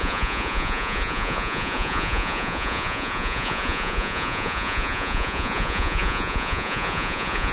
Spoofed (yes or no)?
yes